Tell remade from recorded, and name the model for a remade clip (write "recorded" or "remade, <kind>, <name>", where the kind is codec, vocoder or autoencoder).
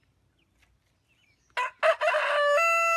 recorded